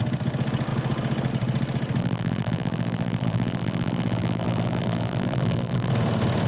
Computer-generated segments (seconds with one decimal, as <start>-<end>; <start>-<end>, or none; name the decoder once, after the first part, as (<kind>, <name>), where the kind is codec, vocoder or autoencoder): 2.0-5.9 (vocoder, BigVGAN v2)